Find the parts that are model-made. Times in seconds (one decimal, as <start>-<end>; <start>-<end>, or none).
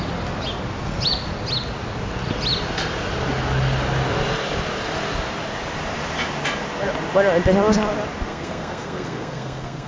8.3-9.9